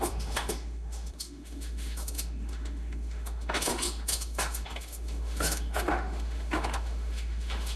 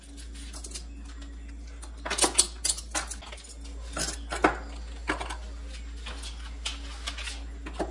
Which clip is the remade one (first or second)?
first